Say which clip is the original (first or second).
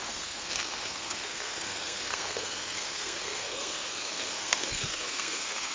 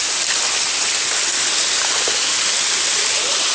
second